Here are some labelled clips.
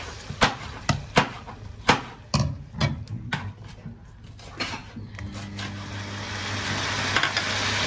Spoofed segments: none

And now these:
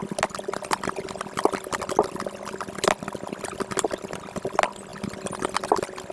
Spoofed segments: none

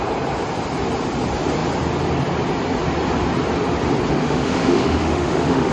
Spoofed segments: 4.1-5.7

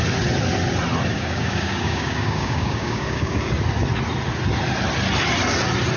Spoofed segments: 1.1-3.5

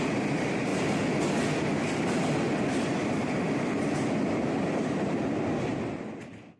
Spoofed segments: 0.0-0.7; 2.0-6.6